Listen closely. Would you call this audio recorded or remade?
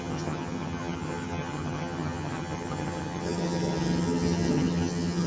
remade